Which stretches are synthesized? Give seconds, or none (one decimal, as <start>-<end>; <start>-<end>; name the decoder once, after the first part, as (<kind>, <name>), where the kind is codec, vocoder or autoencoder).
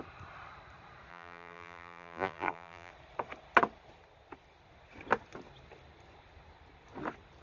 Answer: 1.1-2.9 (vocoder, BigVGAN v2)